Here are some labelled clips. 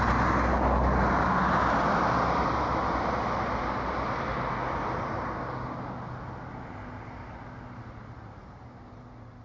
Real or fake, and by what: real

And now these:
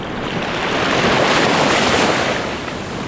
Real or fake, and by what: real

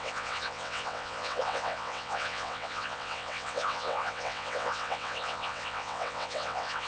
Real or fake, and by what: fake, vocoder, WaveNeXt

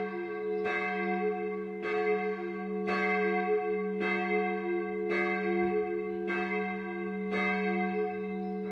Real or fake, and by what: real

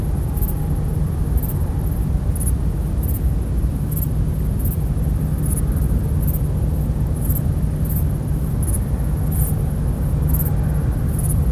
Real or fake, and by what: real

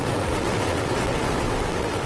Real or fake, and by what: fake, vocoder, WaveNeXt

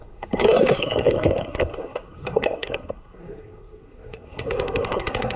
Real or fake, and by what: fake, codec, SNAC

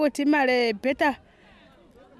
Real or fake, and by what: real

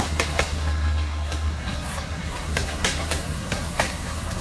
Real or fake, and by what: fake, codec, SNAC